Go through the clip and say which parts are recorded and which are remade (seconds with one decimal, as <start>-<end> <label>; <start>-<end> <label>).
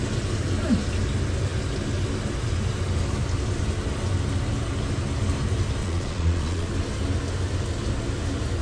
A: 0.0-5.8 recorded; 5.8-6.7 remade; 6.7-8.6 recorded